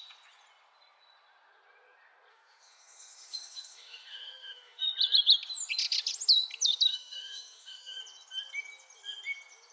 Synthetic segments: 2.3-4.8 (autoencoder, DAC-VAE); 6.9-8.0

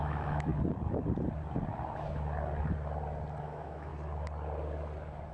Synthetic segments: 0.0-0.5 (autoencoder, DAC-VAE); 3.4-3.9